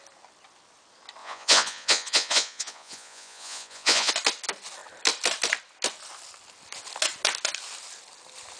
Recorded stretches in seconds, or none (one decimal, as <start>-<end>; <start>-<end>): 0.0-1.2; 4.1-8.6